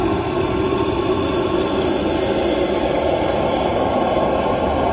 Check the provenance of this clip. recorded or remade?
recorded